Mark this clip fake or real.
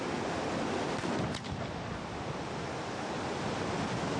real